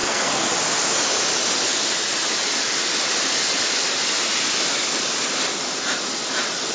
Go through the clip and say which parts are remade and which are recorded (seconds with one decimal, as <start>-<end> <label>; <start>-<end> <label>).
0.0-0.5 remade; 0.5-6.7 recorded